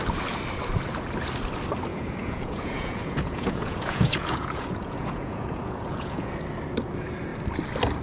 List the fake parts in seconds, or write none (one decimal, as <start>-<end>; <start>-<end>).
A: 1.9-6.3